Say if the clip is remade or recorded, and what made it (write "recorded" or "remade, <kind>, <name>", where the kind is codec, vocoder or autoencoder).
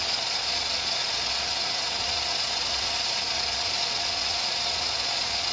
remade, vocoder, Vocos